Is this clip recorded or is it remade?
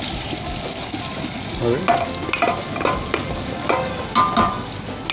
recorded